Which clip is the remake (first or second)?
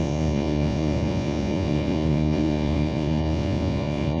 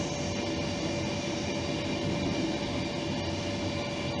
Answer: first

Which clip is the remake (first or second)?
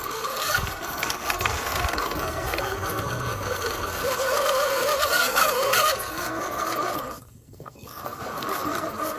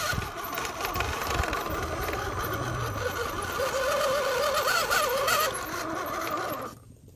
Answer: first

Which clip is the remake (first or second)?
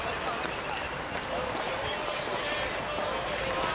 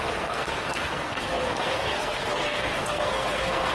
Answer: second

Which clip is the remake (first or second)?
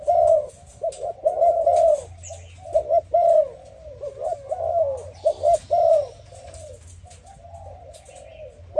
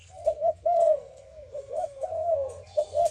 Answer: second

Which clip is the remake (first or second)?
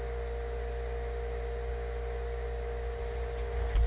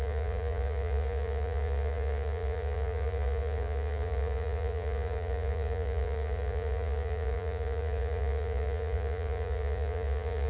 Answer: second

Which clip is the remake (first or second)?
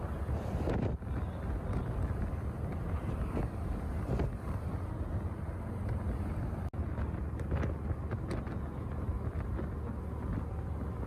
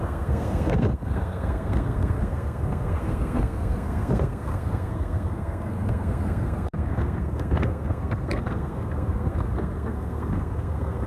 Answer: second